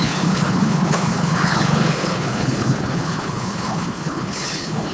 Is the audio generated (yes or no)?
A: yes